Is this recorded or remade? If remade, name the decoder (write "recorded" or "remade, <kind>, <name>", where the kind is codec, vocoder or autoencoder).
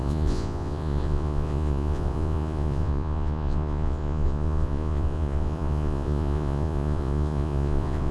remade, vocoder, Vocos